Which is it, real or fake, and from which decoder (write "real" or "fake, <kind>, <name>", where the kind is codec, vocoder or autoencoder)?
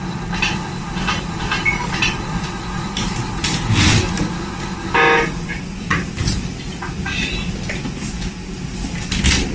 real